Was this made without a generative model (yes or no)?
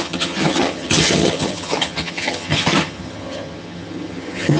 no